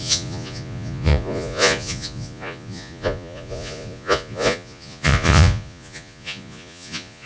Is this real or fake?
fake